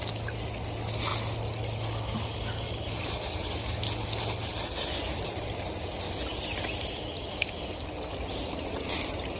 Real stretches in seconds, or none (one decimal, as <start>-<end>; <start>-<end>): 0.0-9.4